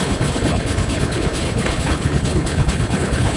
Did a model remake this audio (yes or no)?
yes